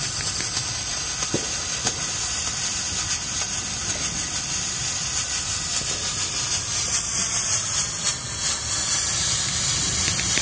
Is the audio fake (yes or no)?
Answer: no